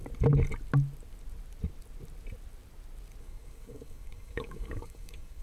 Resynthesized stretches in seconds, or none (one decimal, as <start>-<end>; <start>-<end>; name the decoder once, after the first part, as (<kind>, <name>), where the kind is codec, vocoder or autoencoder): 3.2-5.4 (codec, DAC)